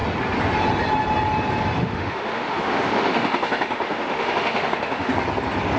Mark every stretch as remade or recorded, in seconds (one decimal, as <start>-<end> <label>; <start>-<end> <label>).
0.0-1.8 recorded; 1.8-5.1 remade; 5.1-5.8 recorded